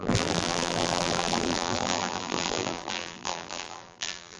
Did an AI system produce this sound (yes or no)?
yes